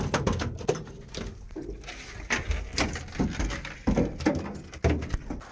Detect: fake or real real